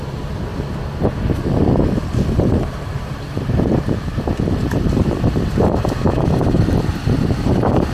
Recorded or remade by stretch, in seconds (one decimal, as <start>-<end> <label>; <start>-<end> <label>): 0.0-0.5 remade; 0.5-2.0 recorded; 2.0-7.9 remade